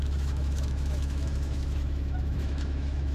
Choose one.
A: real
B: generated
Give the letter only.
B